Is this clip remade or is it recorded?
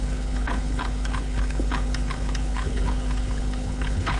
remade